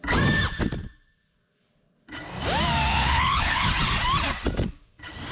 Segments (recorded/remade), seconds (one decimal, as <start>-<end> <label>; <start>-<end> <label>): 0.0-2.9 recorded; 2.9-3.7 remade; 3.7-5.3 recorded